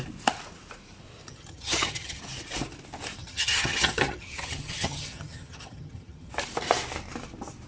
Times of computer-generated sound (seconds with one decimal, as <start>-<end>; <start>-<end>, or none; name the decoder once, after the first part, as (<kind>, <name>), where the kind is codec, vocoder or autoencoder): 1.3-2.2 (vocoder, HiFi-GAN); 3.2-6.3